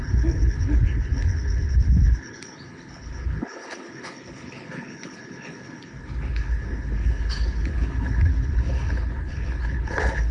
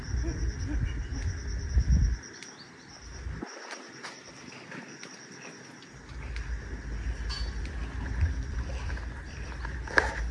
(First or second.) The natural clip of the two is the second